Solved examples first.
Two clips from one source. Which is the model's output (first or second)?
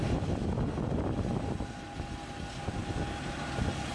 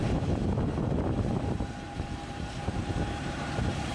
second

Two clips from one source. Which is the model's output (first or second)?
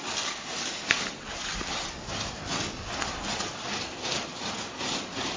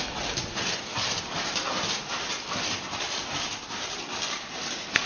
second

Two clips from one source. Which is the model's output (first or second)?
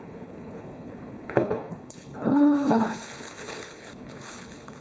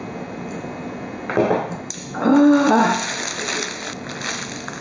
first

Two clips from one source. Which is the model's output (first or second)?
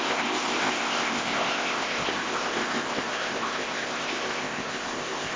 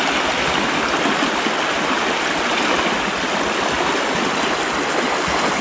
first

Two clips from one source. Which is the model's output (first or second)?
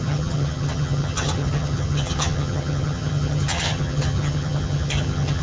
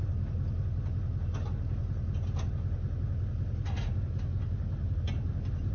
first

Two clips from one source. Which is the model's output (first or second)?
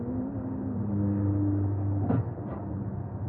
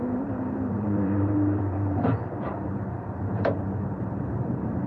second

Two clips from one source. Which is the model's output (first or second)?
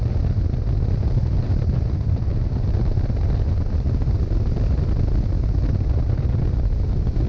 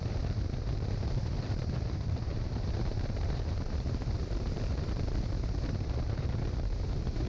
second